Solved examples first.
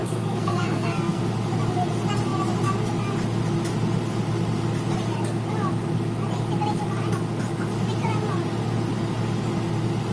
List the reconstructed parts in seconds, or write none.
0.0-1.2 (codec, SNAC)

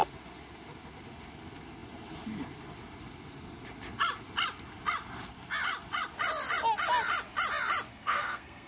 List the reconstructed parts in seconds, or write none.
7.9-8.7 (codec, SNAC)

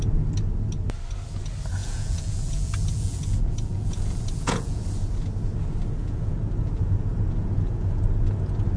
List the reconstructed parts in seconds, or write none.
1.8-4.8 (vocoder, Vocos); 6.0-8.0

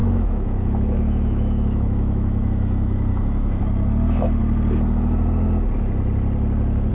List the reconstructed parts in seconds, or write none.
0.0-3.6 (autoencoder, DAC-VAE)

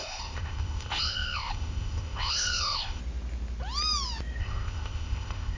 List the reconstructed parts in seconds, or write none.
0.0-3.0 (codec, ZipCodec); 4.4-5.6

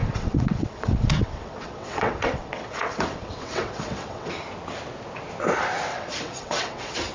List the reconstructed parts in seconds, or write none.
0.0-4.3 (vocoder, WaveNeXt); 5.9-7.1